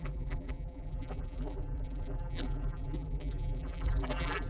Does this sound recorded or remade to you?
remade